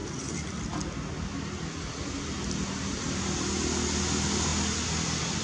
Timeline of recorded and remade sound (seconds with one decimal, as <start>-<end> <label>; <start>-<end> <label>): 0.0-5.4 recorded